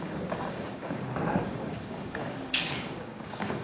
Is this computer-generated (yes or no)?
yes